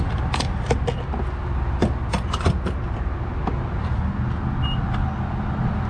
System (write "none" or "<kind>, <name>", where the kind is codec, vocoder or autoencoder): none